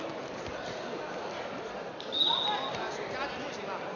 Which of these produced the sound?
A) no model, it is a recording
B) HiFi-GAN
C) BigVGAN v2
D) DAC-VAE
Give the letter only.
A